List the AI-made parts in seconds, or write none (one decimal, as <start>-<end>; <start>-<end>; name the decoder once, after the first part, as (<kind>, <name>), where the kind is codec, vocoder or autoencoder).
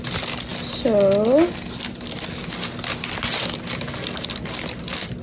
none